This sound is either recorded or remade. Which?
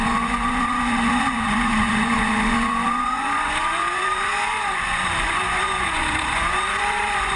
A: remade